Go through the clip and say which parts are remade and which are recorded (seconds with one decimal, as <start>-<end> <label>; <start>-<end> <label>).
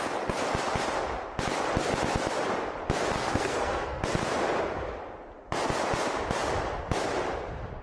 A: 0.0-3.2 recorded; 3.2-4.0 remade; 4.0-7.8 recorded